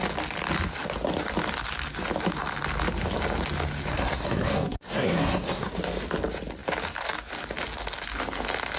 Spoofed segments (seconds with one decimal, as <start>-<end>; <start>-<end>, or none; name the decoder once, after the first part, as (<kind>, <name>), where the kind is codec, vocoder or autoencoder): 3.9-5.7 (codec, SNAC)